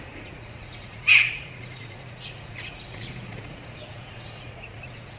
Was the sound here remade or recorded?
remade